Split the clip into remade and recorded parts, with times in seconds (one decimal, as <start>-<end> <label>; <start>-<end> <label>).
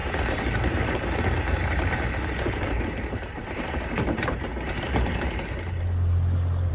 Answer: 0.0-3.1 recorded; 3.1-4.5 remade; 4.5-6.7 recorded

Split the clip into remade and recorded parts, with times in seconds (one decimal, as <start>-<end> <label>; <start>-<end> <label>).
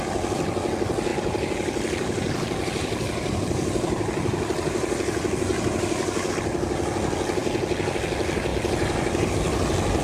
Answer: 0.0-1.1 recorded; 1.1-6.3 remade; 6.3-8.5 recorded; 8.5-9.3 remade; 9.3-10.0 recorded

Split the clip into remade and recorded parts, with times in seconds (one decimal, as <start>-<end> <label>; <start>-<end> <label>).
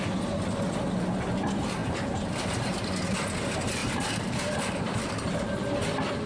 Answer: 0.0-1.8 recorded; 1.8-3.1 remade; 3.1-3.8 recorded; 3.8-5.0 remade; 5.0-6.3 recorded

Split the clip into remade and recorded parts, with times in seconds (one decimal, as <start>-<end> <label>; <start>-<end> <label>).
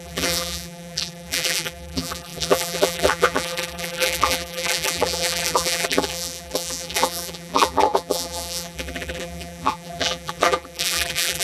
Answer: 0.0-11.4 remade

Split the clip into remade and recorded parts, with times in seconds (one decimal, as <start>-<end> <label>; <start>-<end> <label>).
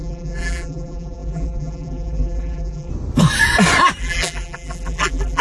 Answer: 0.0-2.9 remade; 2.9-4.0 recorded; 4.0-5.4 remade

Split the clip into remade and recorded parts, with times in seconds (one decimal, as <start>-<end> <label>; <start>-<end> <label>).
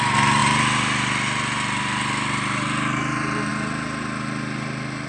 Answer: 0.0-0.4 recorded; 0.4-3.5 remade; 3.5-5.1 recorded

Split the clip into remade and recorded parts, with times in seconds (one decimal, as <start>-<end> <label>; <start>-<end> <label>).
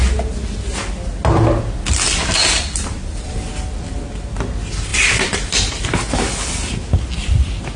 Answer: 0.0-2.4 recorded; 2.4-3.3 remade; 3.3-4.9 recorded; 4.9-5.8 remade; 5.8-7.8 recorded